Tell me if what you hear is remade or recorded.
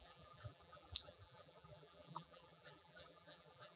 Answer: remade